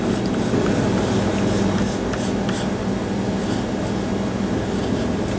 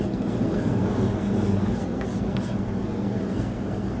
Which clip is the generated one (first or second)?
second